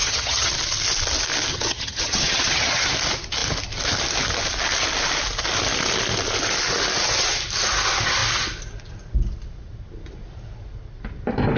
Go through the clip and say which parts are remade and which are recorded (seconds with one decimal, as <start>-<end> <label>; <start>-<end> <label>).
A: 0.0-0.5 remade; 0.5-1.5 recorded; 1.5-2.9 remade; 2.9-11.6 recorded

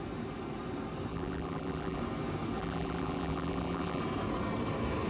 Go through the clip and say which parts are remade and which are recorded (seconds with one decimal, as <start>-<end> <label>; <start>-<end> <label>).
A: 0.0-1.1 recorded; 1.1-2.0 remade; 2.0-2.6 recorded; 2.6-4.0 remade; 4.0-5.1 recorded